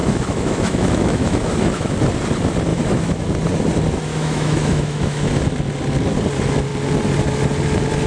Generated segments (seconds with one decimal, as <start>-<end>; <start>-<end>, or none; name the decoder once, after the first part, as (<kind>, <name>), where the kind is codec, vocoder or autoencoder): 0.0-1.9 (autoencoder, DAC-VAE); 2.7-3.2; 4.1-5.3